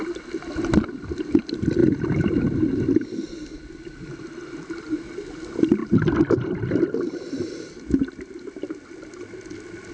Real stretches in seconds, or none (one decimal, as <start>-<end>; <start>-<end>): 0.0-1.8; 2.4-5.8; 7.5-9.9